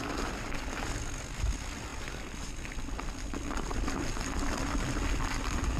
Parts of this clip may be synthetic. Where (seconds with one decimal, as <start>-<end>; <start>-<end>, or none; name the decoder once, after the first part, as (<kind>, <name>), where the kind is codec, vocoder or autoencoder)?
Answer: none